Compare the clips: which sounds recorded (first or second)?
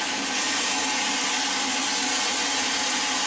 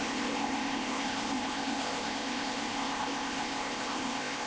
first